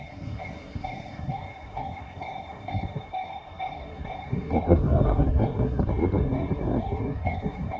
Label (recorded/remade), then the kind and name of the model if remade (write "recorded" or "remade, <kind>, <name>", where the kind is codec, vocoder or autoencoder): remade, codec, SNAC